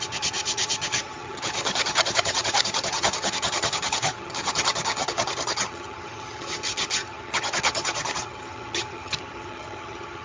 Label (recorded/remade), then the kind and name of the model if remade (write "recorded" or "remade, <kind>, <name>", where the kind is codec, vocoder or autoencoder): remade, vocoder, HiFi-GAN